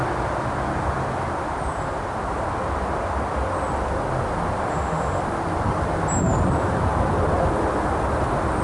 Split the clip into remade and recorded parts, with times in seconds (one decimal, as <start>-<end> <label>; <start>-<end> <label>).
0.0-4.7 recorded; 4.7-5.2 remade; 5.2-8.6 recorded